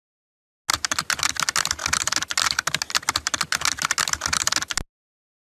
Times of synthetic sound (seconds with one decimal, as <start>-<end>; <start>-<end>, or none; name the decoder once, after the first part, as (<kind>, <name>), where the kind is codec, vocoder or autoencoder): none